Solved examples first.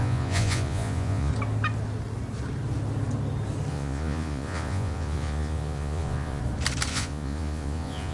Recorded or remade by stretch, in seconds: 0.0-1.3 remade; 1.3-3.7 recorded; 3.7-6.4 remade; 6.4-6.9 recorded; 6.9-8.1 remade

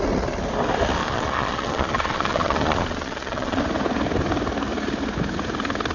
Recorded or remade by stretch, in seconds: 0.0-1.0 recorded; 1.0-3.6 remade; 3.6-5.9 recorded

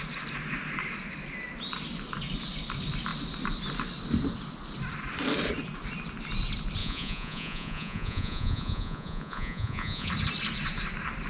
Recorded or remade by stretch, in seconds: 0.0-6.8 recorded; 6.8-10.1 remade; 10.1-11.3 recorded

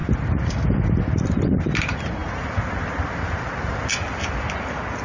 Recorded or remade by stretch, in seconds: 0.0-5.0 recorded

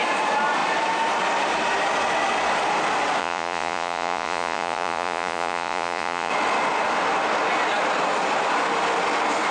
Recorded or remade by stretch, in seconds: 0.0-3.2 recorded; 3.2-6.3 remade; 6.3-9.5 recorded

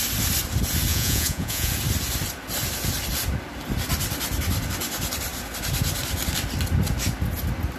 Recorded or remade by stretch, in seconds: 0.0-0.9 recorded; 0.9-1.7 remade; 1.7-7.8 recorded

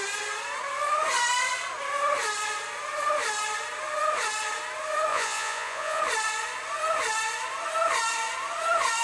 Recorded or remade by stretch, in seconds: 0.0-5.1 recorded; 5.1-6.0 remade; 6.0-9.0 recorded